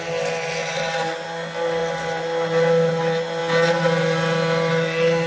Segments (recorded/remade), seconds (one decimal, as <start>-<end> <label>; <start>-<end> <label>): 0.0-5.3 recorded